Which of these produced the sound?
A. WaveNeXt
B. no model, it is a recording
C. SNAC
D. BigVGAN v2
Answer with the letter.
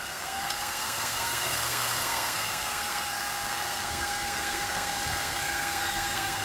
C